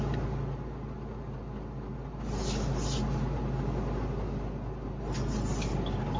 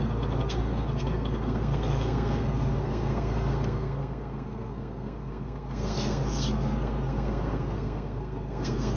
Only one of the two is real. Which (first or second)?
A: first